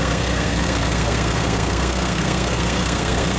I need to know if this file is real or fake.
fake